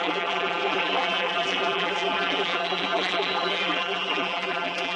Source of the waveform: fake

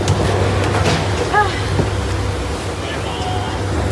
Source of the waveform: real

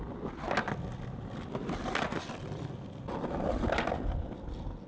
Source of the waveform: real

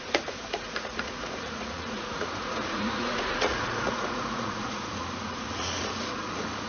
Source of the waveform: fake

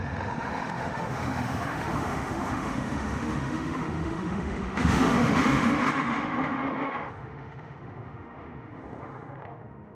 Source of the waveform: fake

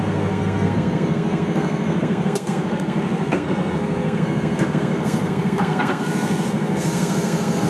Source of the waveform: fake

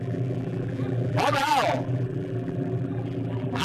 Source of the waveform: fake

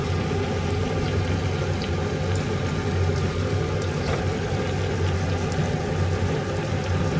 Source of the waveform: real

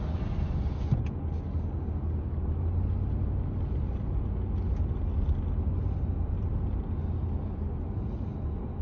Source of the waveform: real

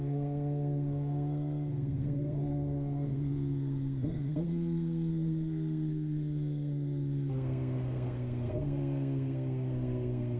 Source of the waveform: fake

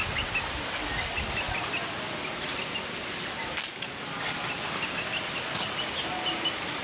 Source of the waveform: real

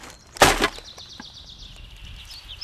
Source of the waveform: real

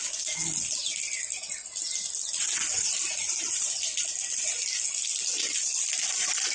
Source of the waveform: real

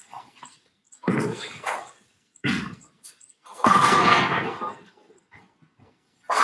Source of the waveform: fake